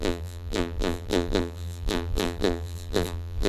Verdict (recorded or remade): remade